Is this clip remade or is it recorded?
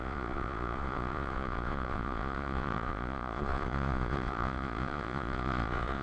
remade